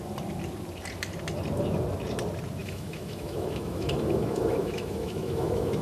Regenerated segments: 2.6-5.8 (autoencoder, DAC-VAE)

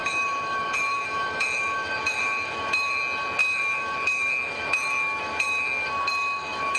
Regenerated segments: 0.0-3.0 (autoencoder, DAC-VAE); 3.4-6.8

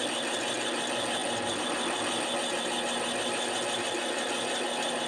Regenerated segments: none

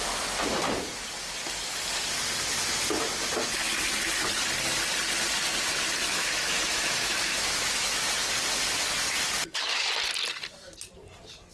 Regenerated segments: 6.1-8.0 (autoencoder, DAC-VAE); 9.4-9.9

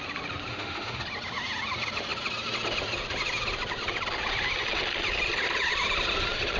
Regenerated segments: 0.5-1.0 (autoencoder, DAC-VAE)

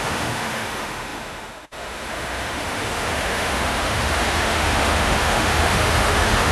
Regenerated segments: 0.0-6.5 (autoencoder, DAC-VAE)